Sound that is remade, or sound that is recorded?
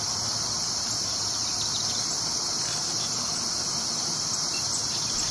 remade